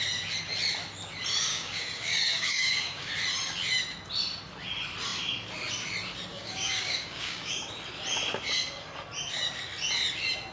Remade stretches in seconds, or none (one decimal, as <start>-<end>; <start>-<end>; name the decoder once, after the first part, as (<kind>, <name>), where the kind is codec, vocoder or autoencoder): 1.5-3.1 (codec, DAC); 6.3-7.7